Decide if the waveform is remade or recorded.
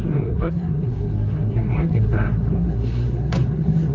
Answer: remade